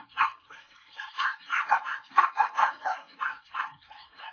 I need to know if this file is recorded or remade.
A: remade